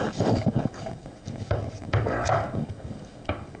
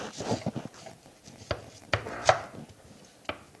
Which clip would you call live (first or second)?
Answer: second